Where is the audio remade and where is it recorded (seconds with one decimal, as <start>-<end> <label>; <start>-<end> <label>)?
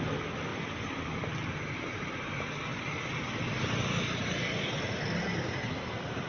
0.0-6.3 recorded